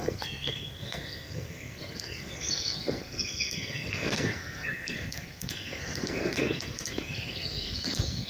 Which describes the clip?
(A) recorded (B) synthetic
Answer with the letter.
B